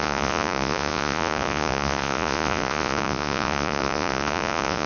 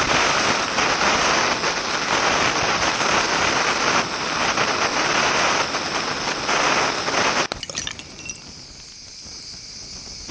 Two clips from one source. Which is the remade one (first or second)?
first